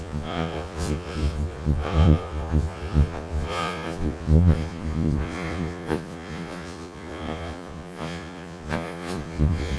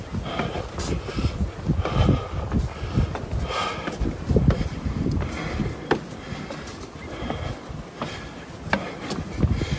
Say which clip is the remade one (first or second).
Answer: first